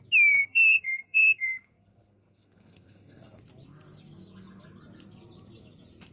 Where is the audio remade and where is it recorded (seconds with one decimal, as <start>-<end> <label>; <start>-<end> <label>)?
0.0-0.4 recorded; 0.4-3.4 remade; 3.4-6.1 recorded